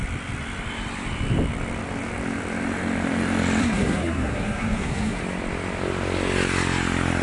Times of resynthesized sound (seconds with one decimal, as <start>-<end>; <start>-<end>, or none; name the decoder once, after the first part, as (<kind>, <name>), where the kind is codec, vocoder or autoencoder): 3.6-5.2 (codec, SNAC)